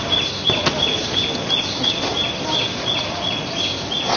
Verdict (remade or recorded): recorded